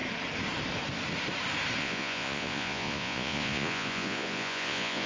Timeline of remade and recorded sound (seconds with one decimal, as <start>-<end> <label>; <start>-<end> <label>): 0.0-1.8 recorded; 1.8-5.1 remade